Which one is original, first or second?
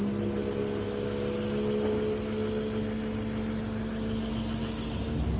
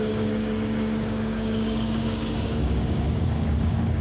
first